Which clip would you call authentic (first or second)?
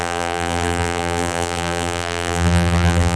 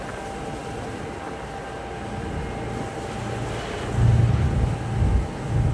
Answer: second